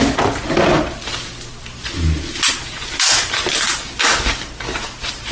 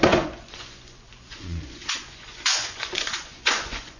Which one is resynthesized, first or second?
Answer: second